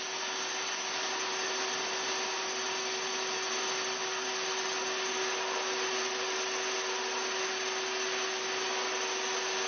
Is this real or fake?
real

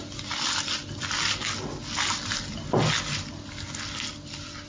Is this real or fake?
real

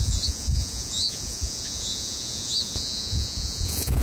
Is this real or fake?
fake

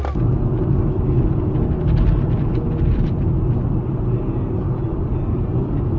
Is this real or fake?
real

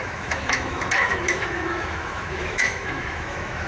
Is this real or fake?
fake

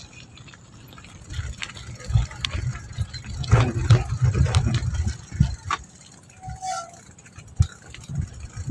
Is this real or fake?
real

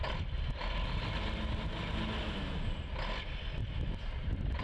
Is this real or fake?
real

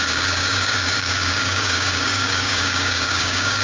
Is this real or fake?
fake